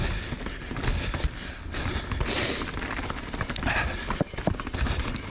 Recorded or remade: recorded